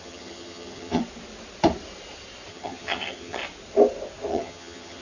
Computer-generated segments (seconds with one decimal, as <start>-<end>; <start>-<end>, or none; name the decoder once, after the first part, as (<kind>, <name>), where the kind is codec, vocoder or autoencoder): 0.0-1.0 (vocoder, HiFi-GAN); 2.5-3.4; 4.3-5.0